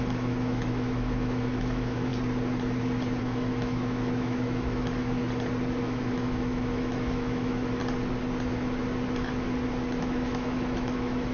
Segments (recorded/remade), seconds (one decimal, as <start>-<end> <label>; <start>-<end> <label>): 0.0-2.1 remade; 2.1-3.2 recorded; 3.2-5.2 remade; 5.2-5.8 recorded; 5.8-7.8 remade; 7.8-10.0 recorded; 10.0-11.3 remade